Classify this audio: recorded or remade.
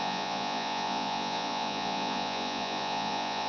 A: remade